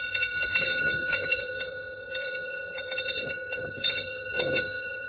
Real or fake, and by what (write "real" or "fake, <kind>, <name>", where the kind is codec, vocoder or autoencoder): fake, vocoder, HiFi-GAN